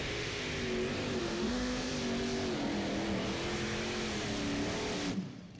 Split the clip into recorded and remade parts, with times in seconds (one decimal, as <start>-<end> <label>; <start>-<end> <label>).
0.0-0.4 remade; 0.4-1.2 recorded; 1.2-1.9 remade; 1.9-5.6 recorded